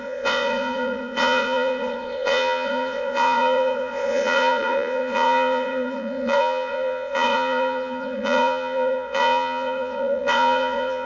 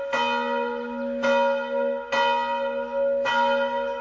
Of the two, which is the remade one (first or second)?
first